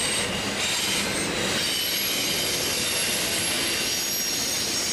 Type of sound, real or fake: real